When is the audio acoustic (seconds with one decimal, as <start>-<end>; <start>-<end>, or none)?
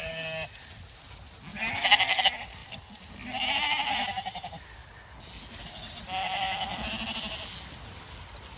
0.0-2.6; 3.1-8.6